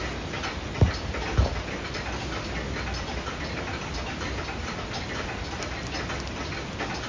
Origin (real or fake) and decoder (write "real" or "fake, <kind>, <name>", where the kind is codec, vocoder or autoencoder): real